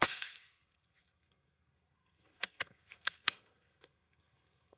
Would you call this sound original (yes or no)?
no